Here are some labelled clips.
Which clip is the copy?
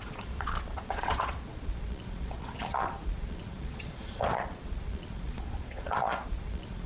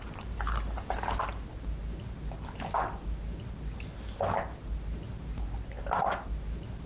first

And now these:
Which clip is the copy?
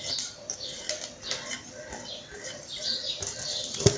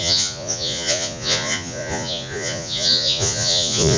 second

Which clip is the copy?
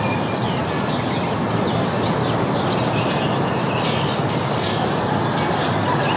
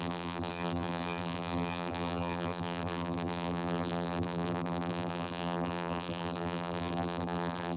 second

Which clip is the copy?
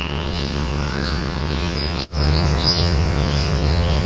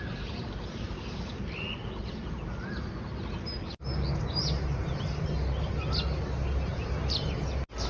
first